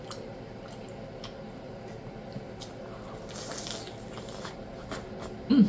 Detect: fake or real real